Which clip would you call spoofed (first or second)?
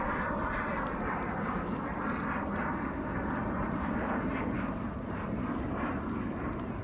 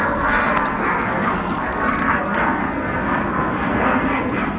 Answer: second